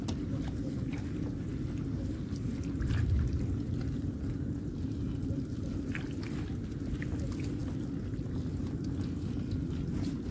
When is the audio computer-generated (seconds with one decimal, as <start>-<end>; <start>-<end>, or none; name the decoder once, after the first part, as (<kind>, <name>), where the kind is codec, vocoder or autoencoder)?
none

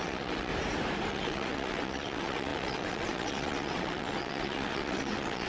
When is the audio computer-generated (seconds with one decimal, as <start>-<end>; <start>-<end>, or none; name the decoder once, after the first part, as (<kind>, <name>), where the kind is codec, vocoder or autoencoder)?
0.0-0.5 (vocoder, WaveNeXt); 1.1-5.5

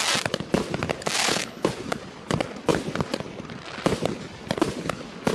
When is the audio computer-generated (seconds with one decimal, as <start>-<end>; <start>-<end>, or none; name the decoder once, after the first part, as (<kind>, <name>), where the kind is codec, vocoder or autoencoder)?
1.2-1.7 (codec, HILCodec)

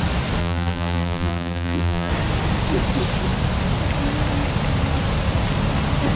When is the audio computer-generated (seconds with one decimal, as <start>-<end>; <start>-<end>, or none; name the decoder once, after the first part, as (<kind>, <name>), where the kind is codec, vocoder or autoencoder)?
0.4-2.1 (vocoder, BigVGAN v2)